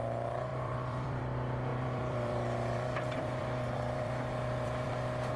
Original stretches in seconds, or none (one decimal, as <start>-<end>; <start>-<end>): 0.0-0.5; 1.2-1.7; 4.9-5.4